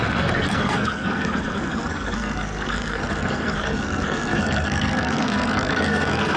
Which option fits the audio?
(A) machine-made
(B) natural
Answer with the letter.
A